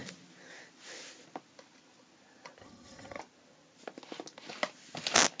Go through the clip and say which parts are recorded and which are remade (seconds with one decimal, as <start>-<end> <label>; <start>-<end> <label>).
0.0-2.6 recorded; 2.6-3.2 remade; 3.2-5.4 recorded